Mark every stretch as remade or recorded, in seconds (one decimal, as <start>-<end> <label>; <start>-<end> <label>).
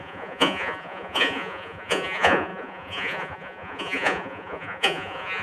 0.0-5.4 remade